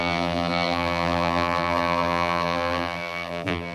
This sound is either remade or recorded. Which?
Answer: remade